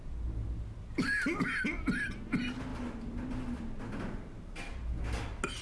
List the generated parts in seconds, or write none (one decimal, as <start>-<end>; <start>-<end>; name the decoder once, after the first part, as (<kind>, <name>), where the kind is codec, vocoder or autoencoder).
none